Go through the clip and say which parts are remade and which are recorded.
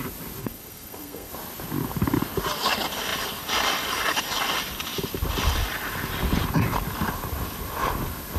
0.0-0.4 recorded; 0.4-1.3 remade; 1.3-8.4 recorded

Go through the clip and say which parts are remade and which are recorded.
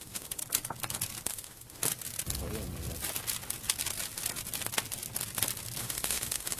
0.0-0.4 remade; 0.4-1.3 recorded; 1.3-1.8 remade; 1.8-5.8 recorded; 5.8-6.6 remade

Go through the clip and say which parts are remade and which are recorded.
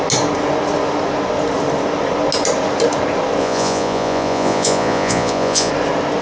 0.0-3.4 recorded; 3.4-5.7 remade; 5.7-6.2 recorded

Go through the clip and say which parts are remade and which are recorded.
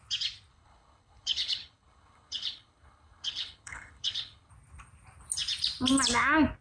0.0-0.5 recorded; 0.5-4.5 remade; 4.5-6.6 recorded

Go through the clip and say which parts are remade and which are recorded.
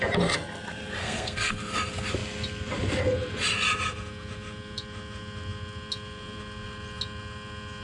0.0-1.0 recorded; 1.0-1.5 remade; 1.5-7.8 recorded